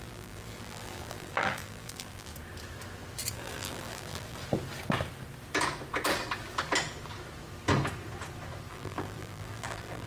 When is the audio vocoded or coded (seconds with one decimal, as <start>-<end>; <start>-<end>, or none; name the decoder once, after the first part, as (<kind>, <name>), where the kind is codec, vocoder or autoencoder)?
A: 0.0-2.3 (vocoder, BigVGAN v2); 3.3-4.4; 8.7-10.1